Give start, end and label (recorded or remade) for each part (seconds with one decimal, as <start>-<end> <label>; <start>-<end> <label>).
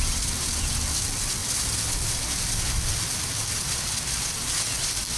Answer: 0.0-5.2 recorded